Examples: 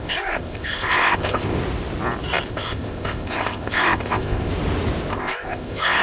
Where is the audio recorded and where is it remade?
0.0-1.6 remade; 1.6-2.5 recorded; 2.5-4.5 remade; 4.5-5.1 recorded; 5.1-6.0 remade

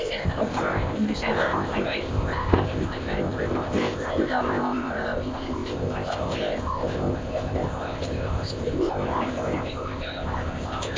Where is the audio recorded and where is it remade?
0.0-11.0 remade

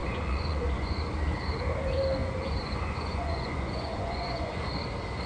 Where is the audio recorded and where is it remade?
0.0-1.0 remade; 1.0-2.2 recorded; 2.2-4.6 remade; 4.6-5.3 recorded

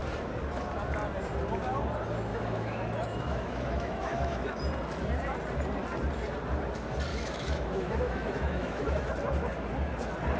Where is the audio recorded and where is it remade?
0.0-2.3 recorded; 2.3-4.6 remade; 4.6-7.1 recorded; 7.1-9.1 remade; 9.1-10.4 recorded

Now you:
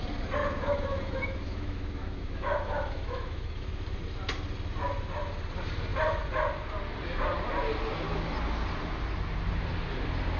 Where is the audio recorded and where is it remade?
0.0-0.4 recorded; 0.4-3.8 remade; 3.8-10.4 recorded

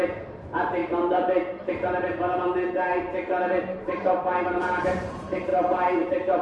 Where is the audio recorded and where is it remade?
0.0-2.1 remade; 2.1-3.6 recorded; 3.6-6.4 remade